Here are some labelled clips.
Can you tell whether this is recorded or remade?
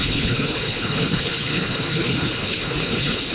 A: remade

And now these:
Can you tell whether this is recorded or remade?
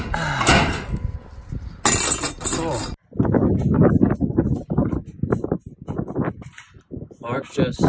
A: recorded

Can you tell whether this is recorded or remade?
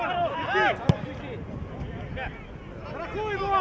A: recorded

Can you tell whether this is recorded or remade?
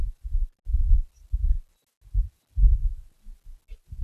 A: recorded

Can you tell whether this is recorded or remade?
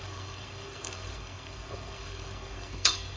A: remade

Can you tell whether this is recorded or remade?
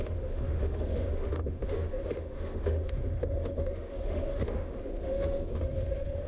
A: remade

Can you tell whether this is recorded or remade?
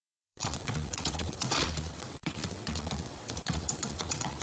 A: remade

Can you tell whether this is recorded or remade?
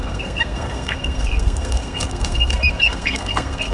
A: remade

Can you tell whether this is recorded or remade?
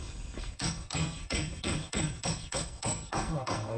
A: remade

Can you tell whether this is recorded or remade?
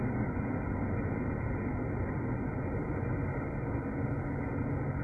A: recorded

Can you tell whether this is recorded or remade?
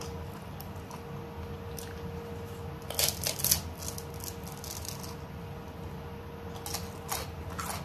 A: recorded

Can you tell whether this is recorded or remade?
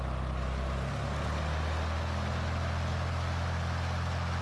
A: recorded